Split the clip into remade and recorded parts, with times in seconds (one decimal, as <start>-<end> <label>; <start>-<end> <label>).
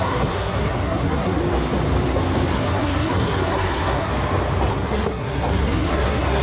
0.0-1.4 remade; 1.4-2.5 recorded; 2.5-4.1 remade; 4.1-4.7 recorded; 4.7-6.4 remade